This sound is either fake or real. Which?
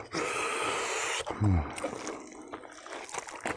real